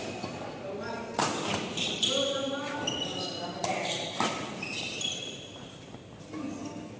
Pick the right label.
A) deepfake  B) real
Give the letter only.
B